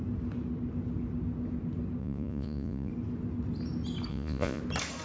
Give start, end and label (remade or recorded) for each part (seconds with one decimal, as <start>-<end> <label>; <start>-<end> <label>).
0.0-2.0 recorded; 2.0-2.9 remade; 2.9-4.1 recorded; 4.1-4.6 remade; 4.6-5.0 recorded